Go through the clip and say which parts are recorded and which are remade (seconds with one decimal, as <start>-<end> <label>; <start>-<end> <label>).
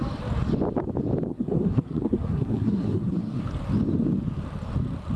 0.0-1.3 recorded; 1.3-3.4 remade; 3.4-5.2 recorded